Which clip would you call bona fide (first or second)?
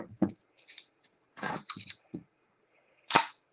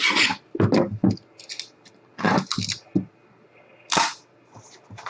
second